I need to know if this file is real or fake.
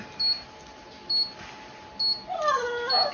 real